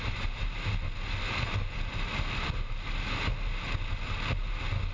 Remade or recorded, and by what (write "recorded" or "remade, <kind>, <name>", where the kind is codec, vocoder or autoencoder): recorded